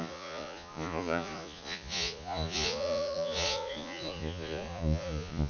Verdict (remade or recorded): remade